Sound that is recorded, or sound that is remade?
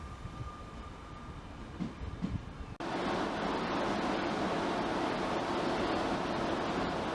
recorded